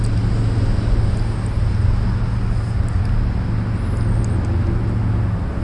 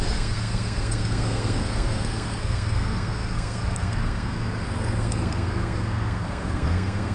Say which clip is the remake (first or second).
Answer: second